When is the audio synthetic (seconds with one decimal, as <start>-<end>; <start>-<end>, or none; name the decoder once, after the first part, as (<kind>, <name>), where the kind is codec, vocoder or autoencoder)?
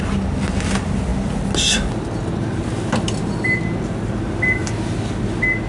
none